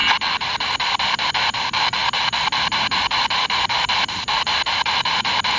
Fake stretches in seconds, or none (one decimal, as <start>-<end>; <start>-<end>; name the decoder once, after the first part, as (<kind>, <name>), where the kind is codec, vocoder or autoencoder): 1.3-2.0 (vocoder, BigVGAN v2); 4.4-5.6